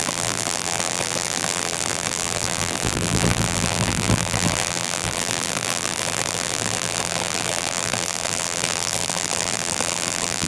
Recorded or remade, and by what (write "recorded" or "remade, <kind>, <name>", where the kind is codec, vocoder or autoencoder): remade, vocoder, BigVGAN v2